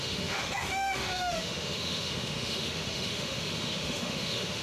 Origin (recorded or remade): remade